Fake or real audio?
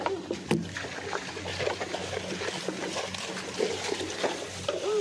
real